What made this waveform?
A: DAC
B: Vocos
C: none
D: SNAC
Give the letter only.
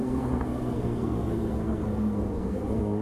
D